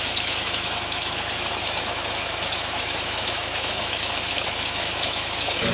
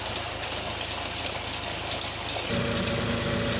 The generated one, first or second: first